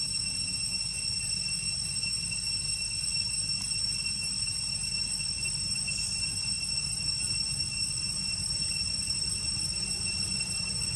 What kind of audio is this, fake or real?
real